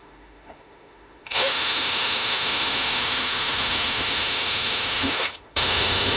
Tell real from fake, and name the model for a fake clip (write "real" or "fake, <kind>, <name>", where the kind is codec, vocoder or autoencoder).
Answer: fake, autoencoder, DAC-VAE